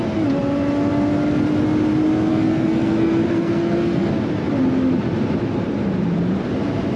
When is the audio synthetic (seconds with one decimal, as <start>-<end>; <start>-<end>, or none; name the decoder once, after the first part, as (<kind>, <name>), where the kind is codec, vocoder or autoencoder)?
2.3-4.1 (codec, SNAC)